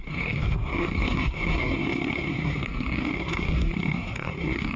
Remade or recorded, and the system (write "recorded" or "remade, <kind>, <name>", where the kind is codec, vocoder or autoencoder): remade, codec, SNAC